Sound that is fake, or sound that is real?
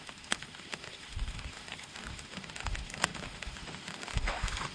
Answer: fake